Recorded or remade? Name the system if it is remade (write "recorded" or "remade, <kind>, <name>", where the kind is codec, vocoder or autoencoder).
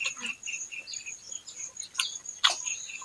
recorded